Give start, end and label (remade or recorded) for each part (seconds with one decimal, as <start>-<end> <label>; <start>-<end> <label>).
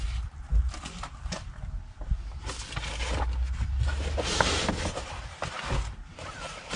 0.0-6.8 recorded